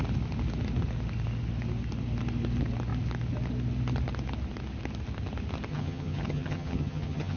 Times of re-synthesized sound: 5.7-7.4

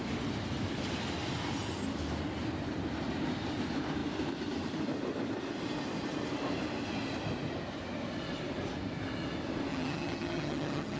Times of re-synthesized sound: 9.7-11.0

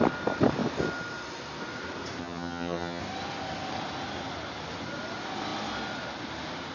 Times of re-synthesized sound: 2.2-3.0

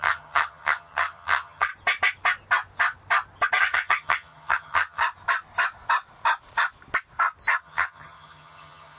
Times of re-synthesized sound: 0.0-1.7; 3.6-5.0; 7.6-9.0

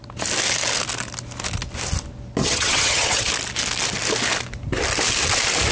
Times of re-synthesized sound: 2.4-3.3

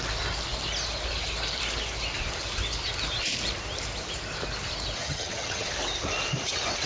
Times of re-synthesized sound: 5.0-5.7